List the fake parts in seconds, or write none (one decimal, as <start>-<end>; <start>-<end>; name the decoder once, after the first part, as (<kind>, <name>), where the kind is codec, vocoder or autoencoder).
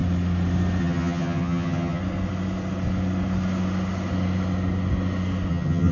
0.8-2.0 (vocoder, HiFi-GAN); 5.5-5.9